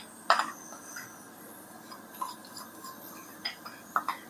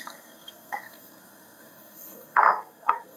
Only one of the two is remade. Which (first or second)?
second